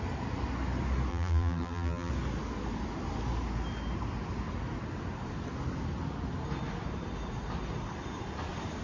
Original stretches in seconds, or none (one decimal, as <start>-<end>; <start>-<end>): 0.0-1.1; 2.1-8.8

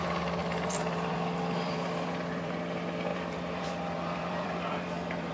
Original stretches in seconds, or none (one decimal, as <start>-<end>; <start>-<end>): 0.0-0.4; 2.5-3.1

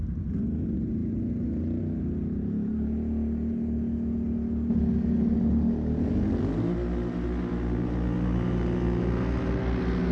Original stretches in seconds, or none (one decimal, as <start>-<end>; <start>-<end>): 0.0-10.1